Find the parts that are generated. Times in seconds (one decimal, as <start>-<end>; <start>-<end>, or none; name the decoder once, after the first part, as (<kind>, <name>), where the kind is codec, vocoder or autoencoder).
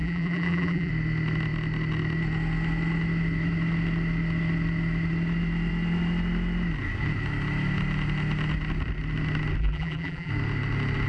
0.0-0.9 (vocoder, BigVGAN v2); 9.6-10.3